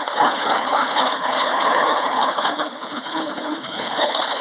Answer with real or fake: fake